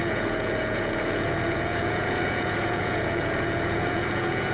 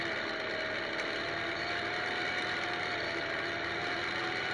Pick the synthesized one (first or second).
first